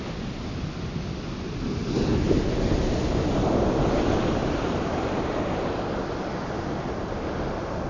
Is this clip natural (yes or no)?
yes